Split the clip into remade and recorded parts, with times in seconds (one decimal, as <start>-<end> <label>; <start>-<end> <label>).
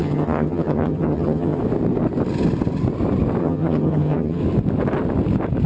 0.0-1.6 remade; 1.6-3.4 recorded; 3.4-4.4 remade; 4.4-5.7 recorded